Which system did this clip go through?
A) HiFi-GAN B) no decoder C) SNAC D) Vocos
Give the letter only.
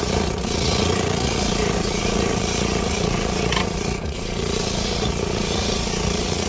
D